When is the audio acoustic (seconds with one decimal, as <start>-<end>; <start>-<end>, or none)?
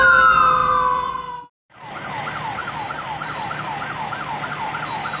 0.0-0.6; 1.4-2.6; 3.5-5.2